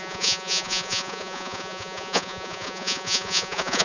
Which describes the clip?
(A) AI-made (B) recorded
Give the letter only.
A